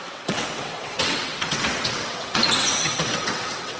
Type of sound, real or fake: fake